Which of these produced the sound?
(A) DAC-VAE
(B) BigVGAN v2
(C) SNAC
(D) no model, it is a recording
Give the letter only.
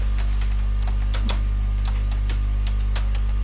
D